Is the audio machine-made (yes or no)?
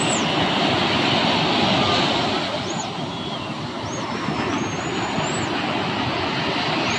no